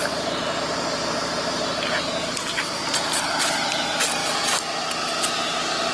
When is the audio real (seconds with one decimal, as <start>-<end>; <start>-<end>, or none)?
0.0-5.9